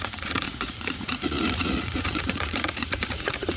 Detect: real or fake fake